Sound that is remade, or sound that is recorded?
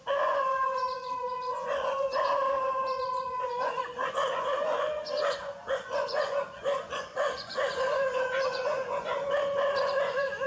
remade